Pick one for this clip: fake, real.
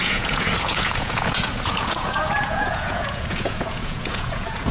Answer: fake